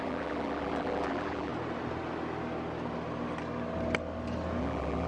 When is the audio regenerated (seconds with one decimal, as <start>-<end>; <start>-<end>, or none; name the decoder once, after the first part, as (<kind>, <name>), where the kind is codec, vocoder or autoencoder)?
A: 0.0-1.5 (vocoder, BigVGAN v2); 4.6-5.1